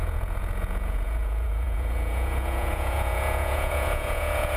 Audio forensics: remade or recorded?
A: remade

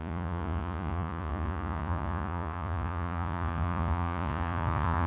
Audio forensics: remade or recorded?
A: remade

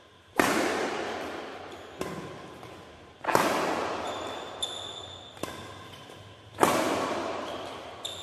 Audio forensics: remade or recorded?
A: recorded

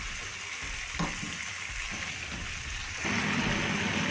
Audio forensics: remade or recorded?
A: recorded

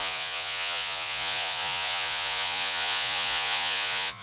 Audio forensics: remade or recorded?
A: remade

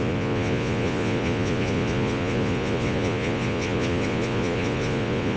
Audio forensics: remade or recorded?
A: remade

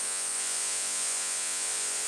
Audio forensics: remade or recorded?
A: remade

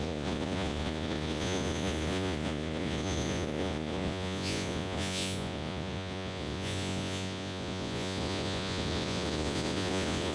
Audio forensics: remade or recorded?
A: remade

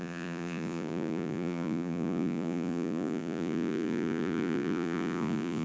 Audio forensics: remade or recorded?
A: remade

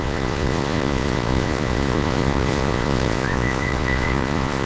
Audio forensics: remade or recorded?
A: remade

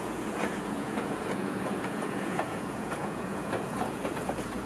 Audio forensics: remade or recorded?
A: remade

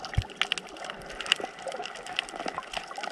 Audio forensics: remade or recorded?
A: recorded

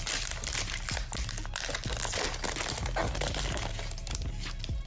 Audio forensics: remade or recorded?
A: recorded